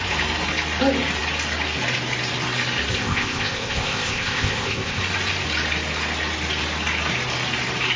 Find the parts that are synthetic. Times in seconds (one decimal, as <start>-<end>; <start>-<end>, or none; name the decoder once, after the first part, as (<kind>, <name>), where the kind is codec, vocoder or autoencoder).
2.9-5.0 (codec, ZipCodec)